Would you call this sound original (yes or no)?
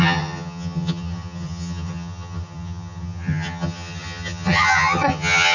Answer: no